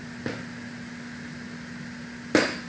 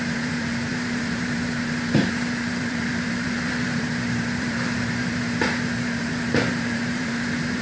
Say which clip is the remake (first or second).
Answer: second